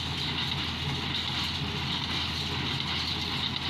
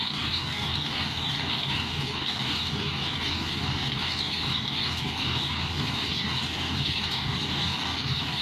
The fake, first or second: second